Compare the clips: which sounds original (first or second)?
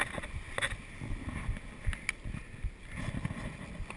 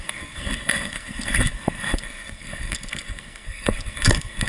first